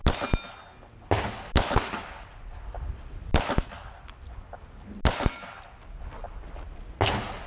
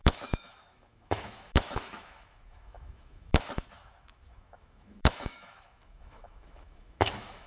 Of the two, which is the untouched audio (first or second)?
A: first